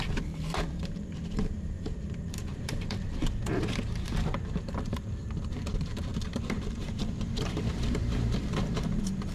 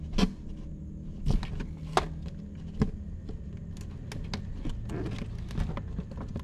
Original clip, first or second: second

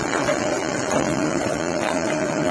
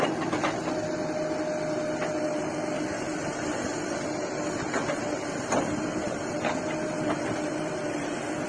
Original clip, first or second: second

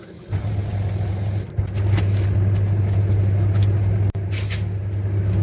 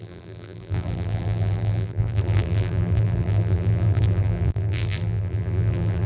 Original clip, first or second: first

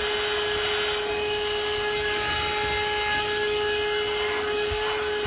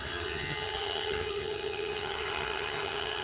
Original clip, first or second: first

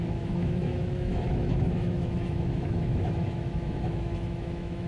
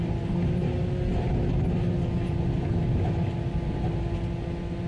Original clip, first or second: second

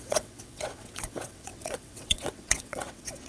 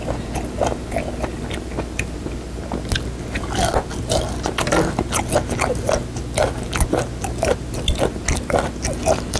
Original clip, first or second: second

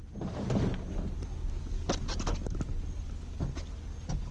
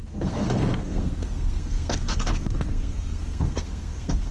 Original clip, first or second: first